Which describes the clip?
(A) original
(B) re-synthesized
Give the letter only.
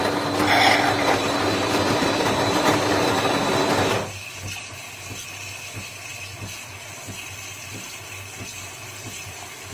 B